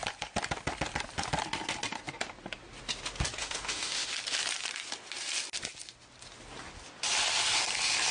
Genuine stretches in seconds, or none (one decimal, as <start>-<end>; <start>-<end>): 0.0-3.4; 4.1-8.1